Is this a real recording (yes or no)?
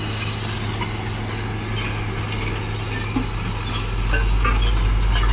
yes